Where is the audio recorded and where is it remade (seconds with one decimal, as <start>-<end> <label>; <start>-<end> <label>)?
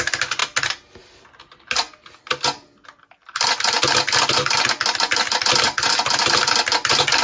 0.0-7.2 recorded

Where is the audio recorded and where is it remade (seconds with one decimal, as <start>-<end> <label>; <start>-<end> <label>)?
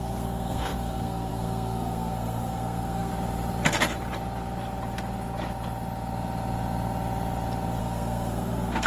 0.0-3.1 remade; 3.1-7.8 recorded; 7.8-8.9 remade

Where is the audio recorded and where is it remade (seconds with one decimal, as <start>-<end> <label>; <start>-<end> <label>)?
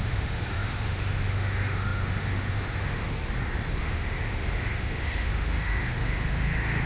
0.0-3.2 remade; 3.2-3.8 recorded; 3.8-6.9 remade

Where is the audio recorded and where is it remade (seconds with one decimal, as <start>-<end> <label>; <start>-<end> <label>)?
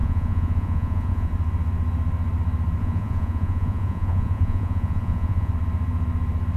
0.0-1.3 remade; 1.3-2.8 recorded; 2.8-5.5 remade; 5.5-6.6 recorded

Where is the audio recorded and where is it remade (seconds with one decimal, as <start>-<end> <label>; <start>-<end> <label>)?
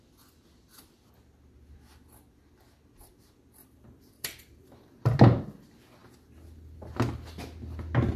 0.0-3.6 recorded; 3.6-5.0 remade; 5.0-8.2 recorded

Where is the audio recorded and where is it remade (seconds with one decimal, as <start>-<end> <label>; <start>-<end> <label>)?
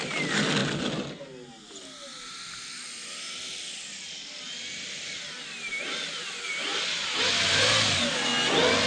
0.0-8.9 recorded